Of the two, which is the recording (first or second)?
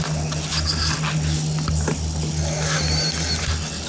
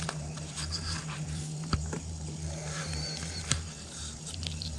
first